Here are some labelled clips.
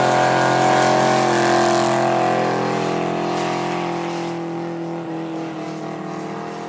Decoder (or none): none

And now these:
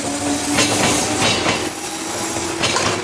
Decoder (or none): none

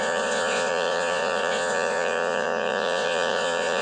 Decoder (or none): vocoder, Vocos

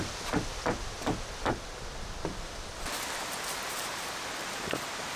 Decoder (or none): vocoder, BigVGAN v2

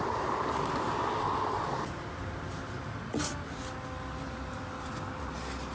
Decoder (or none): none